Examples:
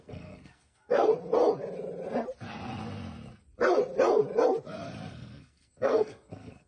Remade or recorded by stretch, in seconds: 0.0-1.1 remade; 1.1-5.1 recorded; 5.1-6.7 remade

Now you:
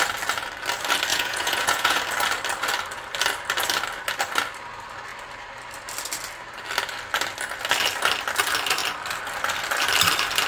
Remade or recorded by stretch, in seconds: 0.0-1.1 recorded; 1.1-2.0 remade; 2.0-10.5 recorded

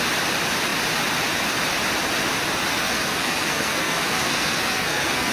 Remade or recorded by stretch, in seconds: 0.0-2.7 recorded; 2.7-5.3 remade

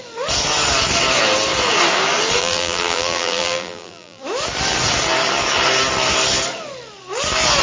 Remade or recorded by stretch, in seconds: 0.0-2.4 recorded; 2.4-4.2 remade; 4.2-7.6 recorded

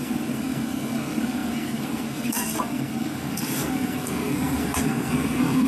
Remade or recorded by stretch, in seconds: 0.0-5.7 remade